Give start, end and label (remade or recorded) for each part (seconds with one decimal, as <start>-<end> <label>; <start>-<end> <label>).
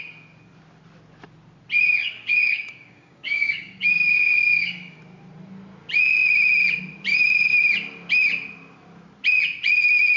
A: 0.0-2.0 recorded; 2.0-5.0 remade; 5.0-10.2 recorded